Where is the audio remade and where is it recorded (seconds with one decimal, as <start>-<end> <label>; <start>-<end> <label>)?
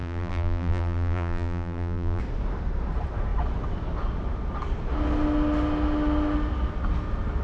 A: 0.0-2.2 remade; 2.2-7.4 recorded